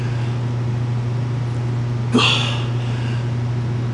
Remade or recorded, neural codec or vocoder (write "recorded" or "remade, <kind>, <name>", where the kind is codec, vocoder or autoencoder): recorded